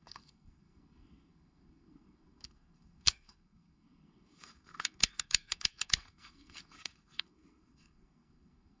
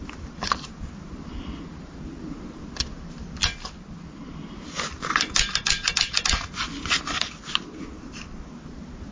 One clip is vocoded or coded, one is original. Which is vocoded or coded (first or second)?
first